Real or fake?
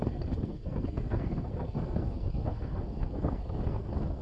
fake